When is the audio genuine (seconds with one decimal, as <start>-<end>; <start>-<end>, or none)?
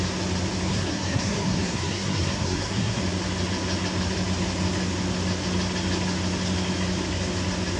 0.0-0.7; 3.0-7.8